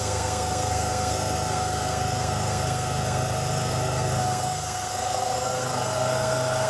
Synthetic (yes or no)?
yes